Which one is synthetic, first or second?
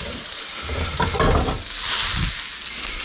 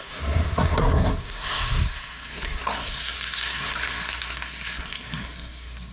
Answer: second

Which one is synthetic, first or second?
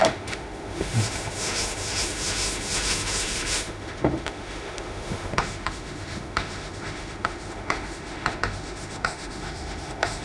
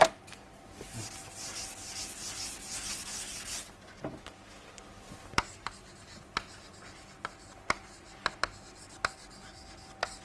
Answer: first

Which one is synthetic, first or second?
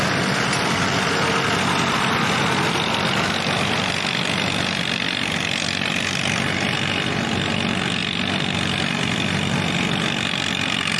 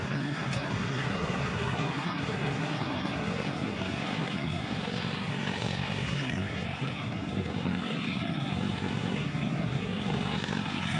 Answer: second